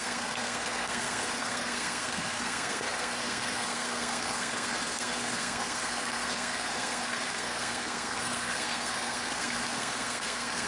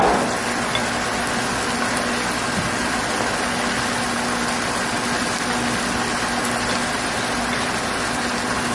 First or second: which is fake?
first